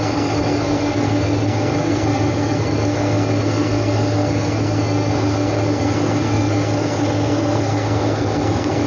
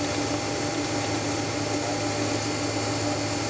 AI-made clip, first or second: first